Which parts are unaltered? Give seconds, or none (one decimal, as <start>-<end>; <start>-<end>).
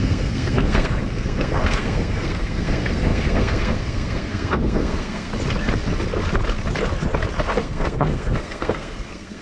5.3-7.6